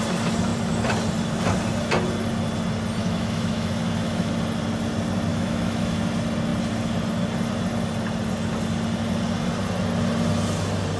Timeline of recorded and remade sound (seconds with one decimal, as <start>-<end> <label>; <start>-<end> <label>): 0.0-3.0 recorded; 3.0-4.3 remade; 4.3-5.3 recorded; 5.3-6.0 remade; 6.0-11.0 recorded